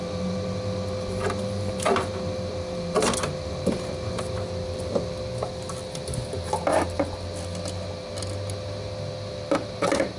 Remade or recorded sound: remade